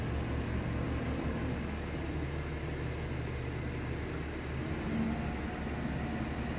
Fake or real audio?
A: real